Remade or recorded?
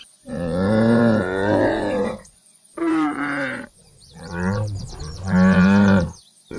remade